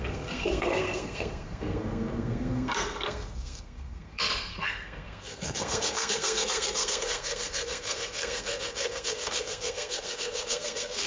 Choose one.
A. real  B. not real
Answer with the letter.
B